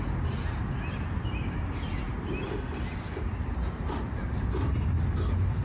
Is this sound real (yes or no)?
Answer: yes